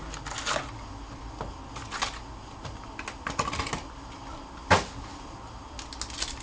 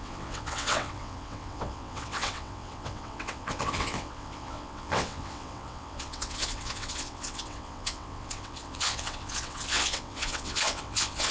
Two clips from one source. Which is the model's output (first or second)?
second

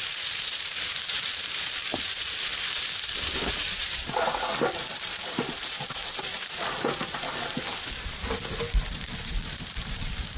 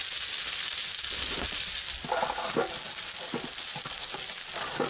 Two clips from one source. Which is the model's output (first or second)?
first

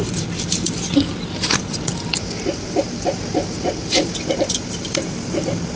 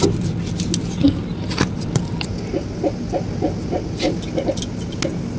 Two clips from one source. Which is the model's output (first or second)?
first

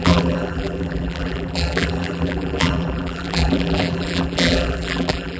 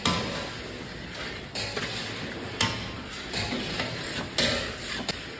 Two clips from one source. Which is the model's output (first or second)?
first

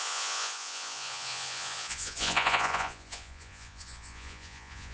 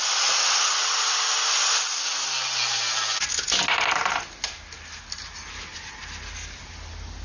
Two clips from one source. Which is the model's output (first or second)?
first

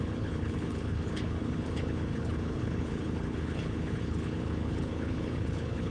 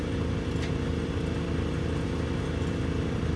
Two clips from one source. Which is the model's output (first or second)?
first